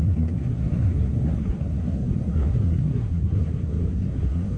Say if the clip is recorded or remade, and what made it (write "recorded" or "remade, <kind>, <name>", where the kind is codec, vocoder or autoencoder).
remade, codec, SNAC